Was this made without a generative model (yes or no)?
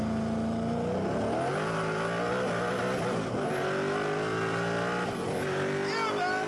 yes